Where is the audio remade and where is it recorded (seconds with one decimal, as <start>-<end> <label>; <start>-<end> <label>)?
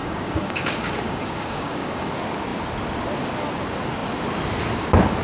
0.0-2.1 remade; 2.1-5.2 recorded